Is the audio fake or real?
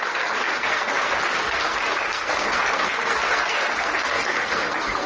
fake